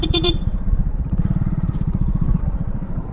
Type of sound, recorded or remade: remade